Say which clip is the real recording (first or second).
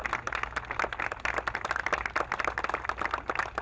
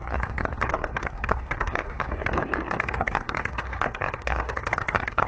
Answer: first